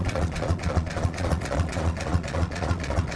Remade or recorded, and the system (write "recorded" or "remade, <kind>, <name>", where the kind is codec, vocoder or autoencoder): remade, vocoder, Vocos